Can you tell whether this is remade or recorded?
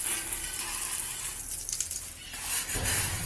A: recorded